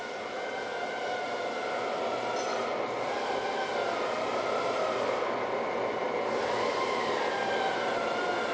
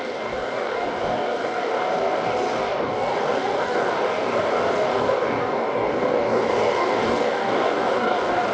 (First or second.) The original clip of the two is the first